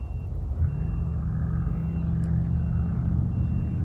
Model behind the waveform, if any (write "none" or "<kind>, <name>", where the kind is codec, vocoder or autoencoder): none